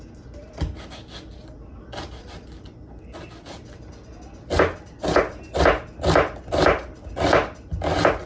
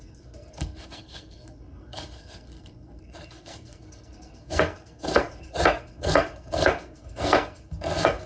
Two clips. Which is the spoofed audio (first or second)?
second